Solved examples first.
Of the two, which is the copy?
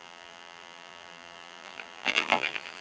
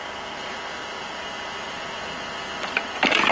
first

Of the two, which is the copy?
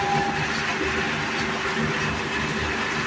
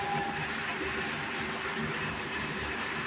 second